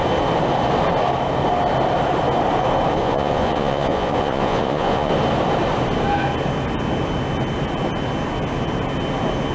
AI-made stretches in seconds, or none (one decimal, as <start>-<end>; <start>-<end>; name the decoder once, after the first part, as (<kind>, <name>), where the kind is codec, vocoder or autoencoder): 3.0-5.1 (vocoder, Vocos)